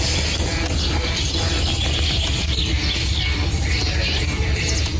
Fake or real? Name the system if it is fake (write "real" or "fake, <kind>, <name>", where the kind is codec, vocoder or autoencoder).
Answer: real